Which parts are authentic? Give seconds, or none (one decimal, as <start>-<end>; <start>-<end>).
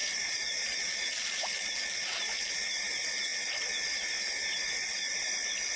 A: 1.8-5.8